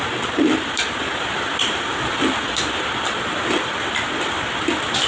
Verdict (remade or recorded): recorded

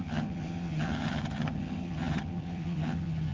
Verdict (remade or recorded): remade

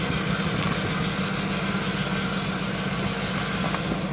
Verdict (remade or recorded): recorded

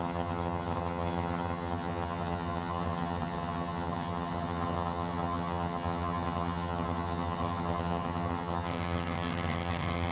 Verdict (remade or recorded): remade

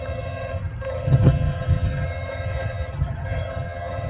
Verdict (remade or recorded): remade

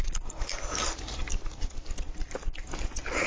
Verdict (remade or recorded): recorded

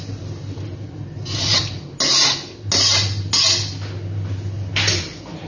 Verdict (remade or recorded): recorded